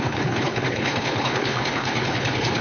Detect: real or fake fake